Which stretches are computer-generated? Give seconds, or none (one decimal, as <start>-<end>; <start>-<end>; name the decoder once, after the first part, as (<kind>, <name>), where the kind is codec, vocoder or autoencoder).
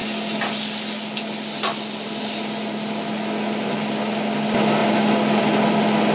none